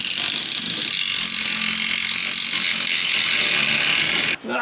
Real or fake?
real